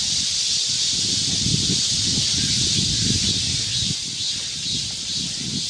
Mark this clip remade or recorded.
recorded